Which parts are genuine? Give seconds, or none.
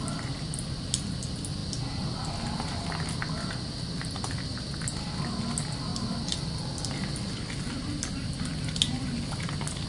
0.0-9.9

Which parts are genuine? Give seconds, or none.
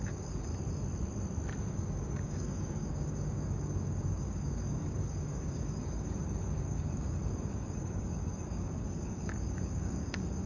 0.5-1.6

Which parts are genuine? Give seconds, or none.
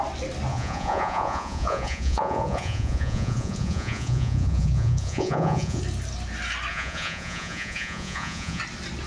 0.0-0.5; 5.8-6.7; 8.6-9.1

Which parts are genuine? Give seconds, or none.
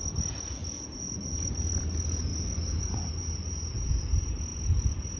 0.6-1.2; 2.3-2.8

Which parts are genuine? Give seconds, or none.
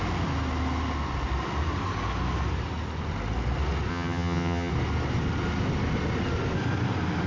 0.0-3.9; 4.7-7.3